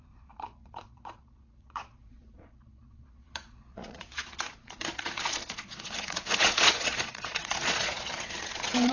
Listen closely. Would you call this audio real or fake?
fake